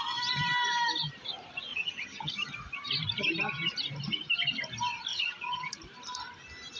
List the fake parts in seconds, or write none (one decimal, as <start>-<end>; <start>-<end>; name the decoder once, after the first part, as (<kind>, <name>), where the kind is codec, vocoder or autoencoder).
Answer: 1.7-2.3 (vocoder, HiFi-GAN); 5.1-5.7